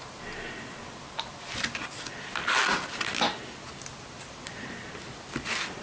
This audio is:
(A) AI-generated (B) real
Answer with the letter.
B